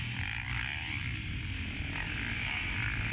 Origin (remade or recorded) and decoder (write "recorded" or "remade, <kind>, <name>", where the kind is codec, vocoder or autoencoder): recorded